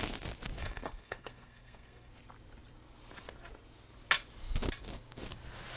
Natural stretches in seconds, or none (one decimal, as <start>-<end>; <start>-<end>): 0.0-0.6; 2.1-5.8